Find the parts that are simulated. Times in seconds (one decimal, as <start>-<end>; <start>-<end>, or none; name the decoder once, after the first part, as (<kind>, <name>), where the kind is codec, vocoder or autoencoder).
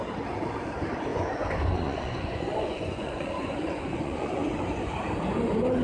1.1-4.6 (vocoder, Vocos)